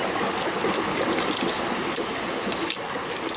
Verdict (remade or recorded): recorded